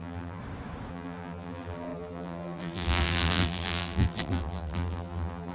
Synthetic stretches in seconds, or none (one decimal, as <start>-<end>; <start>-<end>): 0.0-0.4; 0.9-5.5